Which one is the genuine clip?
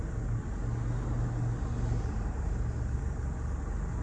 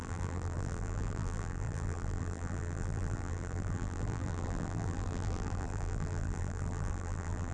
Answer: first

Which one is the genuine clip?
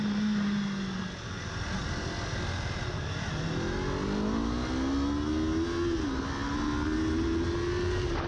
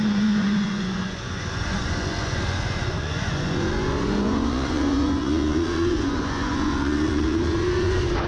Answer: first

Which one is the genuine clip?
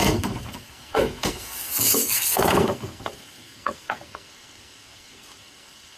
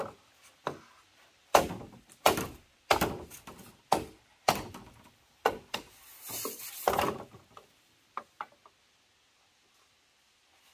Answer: second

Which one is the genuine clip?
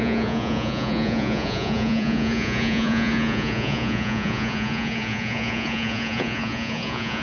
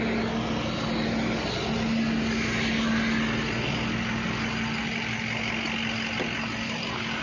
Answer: second